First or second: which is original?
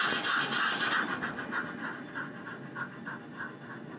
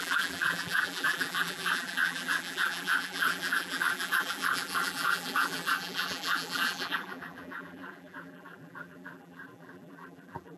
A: first